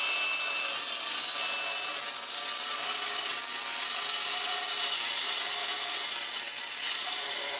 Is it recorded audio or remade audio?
recorded